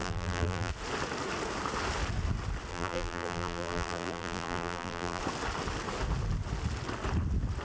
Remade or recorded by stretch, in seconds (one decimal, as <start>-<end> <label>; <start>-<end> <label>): 0.0-0.7 remade; 0.7-2.7 recorded; 2.7-5.2 remade; 5.2-7.6 recorded